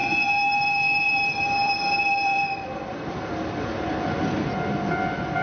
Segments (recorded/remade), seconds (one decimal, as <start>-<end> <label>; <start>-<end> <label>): 0.0-3.2 remade; 3.2-5.4 recorded